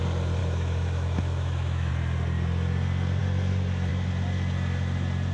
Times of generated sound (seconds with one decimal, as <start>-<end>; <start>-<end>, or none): 0.4-1.9